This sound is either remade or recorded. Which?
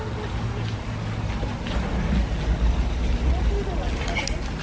recorded